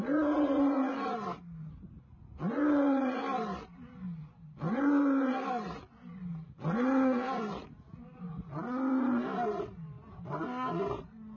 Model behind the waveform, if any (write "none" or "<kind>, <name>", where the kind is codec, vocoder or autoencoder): none